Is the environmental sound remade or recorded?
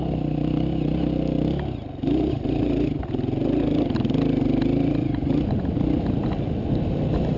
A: recorded